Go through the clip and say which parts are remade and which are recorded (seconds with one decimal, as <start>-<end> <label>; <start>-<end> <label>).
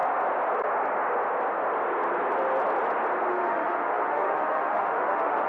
0.0-3.3 recorded; 3.3-5.5 remade